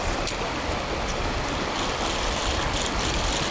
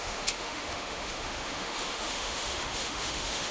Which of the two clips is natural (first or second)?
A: first